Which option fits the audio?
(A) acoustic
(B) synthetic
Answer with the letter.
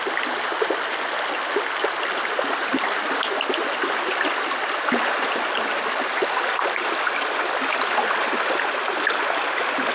A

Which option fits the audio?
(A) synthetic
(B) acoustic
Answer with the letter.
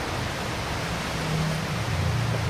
B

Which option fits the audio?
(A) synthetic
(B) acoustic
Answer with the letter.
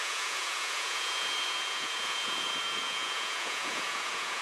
A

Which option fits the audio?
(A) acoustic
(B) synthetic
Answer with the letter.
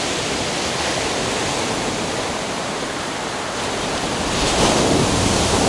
A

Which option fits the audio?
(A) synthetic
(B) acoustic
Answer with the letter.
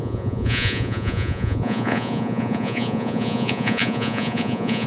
A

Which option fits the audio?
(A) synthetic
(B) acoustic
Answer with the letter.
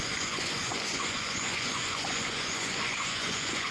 A